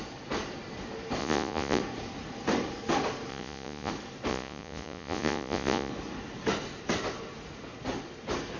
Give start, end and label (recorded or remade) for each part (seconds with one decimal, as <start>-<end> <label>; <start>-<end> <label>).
0.0-1.2 recorded; 1.2-1.8 remade; 1.8-3.3 recorded; 3.3-3.9 remade; 3.9-4.3 recorded; 4.3-5.9 remade; 5.9-8.6 recorded